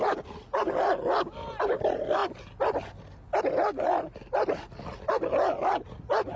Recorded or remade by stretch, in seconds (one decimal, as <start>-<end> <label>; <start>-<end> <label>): 0.0-6.4 recorded